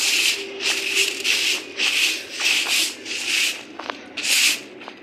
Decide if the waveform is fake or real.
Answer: real